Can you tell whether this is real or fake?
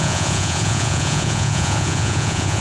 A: fake